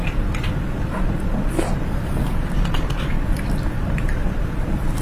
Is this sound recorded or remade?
remade